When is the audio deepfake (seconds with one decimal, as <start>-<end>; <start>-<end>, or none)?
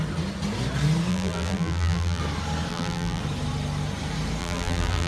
1.1-2.2; 2.7-3.2; 4.4-5.1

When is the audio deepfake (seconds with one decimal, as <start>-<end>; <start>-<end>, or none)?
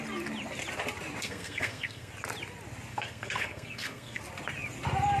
1.2-2.1; 2.9-4.2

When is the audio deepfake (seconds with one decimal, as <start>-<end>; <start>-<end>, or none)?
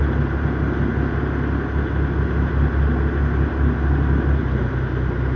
4.4-5.4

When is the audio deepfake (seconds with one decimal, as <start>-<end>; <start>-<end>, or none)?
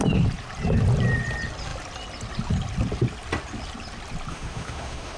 4.3-5.2